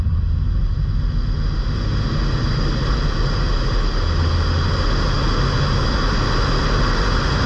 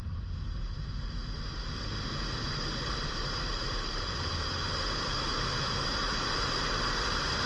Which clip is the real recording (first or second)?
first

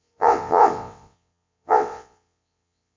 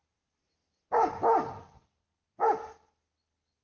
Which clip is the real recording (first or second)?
second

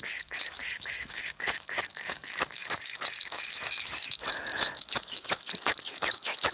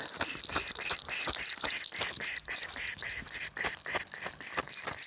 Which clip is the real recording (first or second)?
second